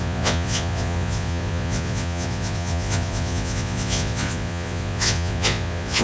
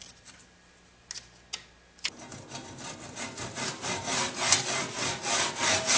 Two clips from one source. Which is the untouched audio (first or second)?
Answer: second